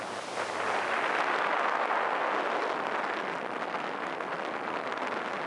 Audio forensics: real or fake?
real